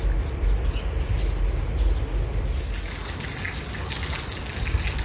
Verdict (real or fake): real